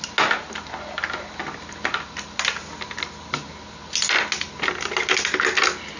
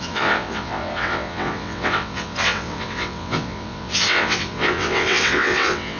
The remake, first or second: second